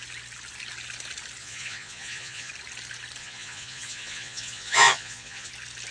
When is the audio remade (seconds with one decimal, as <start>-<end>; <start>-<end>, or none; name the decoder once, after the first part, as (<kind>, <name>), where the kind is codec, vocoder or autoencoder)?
1.4-2.5 (vocoder, Vocos); 3.2-5.5